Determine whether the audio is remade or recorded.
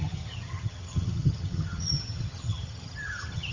remade